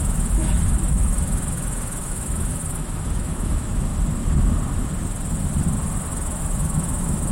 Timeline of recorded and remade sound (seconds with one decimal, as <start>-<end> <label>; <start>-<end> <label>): 0.0-3.9 remade; 3.9-6.1 recorded; 6.1-7.3 remade